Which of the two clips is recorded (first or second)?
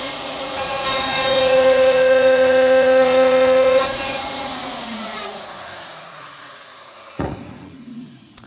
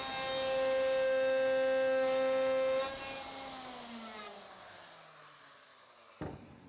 second